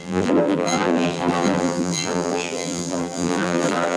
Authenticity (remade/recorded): remade